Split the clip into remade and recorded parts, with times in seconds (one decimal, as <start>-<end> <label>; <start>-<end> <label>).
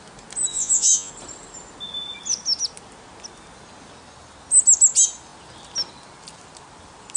0.0-0.5 recorded; 0.5-1.1 remade; 1.1-7.2 recorded